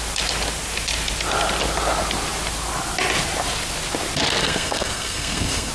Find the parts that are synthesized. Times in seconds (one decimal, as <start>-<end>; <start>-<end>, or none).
4.4-5.7